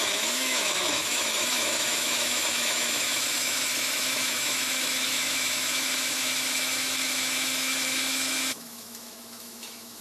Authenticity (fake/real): fake